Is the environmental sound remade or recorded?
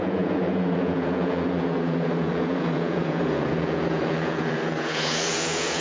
remade